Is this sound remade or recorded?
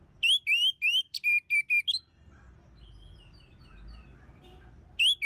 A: recorded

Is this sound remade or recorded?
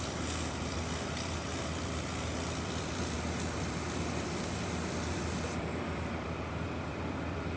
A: remade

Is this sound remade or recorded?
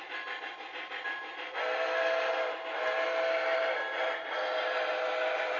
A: recorded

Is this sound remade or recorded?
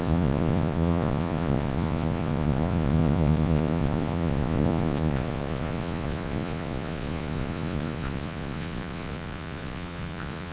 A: remade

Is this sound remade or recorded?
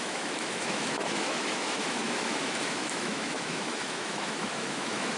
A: remade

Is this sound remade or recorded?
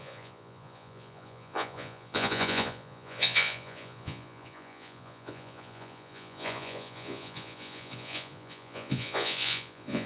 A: remade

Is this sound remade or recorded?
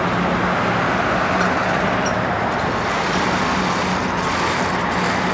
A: recorded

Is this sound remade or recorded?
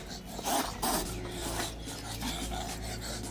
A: recorded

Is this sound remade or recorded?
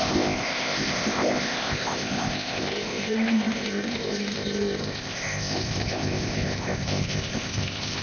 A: remade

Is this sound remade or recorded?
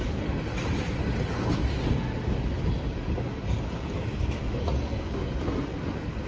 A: recorded